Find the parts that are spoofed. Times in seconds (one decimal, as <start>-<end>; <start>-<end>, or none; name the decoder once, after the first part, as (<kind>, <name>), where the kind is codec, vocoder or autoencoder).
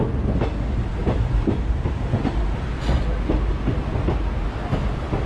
1.0-2.2 (vocoder, BigVGAN v2)